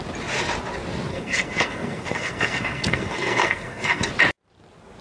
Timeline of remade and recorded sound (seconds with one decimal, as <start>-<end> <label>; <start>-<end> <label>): 0.0-1.1 recorded; 1.1-4.1 remade; 4.1-5.0 recorded